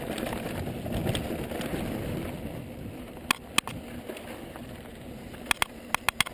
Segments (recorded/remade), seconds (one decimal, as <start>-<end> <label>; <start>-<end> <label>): 0.0-6.3 recorded